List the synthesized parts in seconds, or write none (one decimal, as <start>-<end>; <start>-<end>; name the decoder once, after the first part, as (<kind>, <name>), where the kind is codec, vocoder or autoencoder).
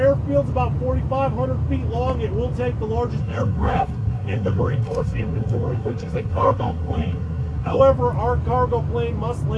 3.2-7.8 (codec, SNAC)